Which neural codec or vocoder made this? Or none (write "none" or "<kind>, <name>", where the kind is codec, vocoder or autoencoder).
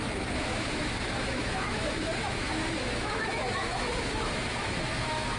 autoencoder, DAC-VAE